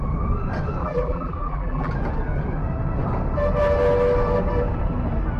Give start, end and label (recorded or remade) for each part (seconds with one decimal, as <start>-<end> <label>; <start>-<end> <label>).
0.0-0.8 recorded; 0.8-1.9 remade; 1.9-5.4 recorded